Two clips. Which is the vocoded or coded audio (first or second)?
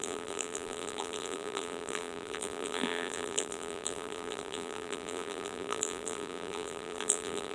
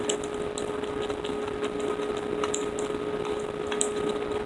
first